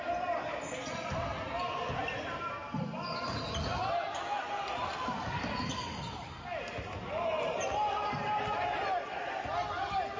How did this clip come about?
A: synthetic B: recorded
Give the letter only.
B